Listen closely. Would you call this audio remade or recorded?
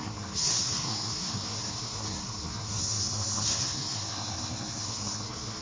remade